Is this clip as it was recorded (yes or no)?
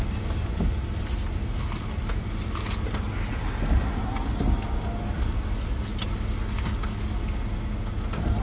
yes